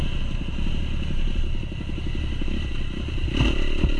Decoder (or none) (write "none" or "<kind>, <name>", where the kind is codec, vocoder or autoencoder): none